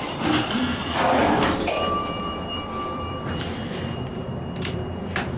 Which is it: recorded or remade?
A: remade